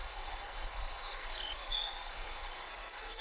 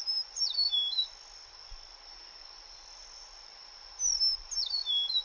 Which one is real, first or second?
second